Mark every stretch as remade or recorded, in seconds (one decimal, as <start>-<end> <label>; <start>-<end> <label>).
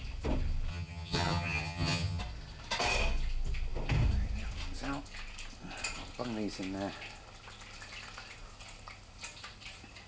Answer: 0.0-0.7 recorded; 0.7-2.2 remade; 2.2-10.1 recorded